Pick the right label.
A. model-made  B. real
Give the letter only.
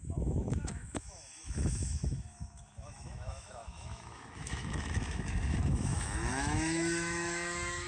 A